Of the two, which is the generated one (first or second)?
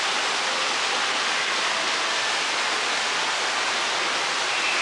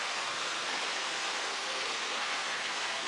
second